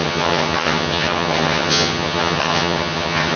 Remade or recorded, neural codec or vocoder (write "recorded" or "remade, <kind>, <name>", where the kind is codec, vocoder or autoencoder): remade, vocoder, HiFi-GAN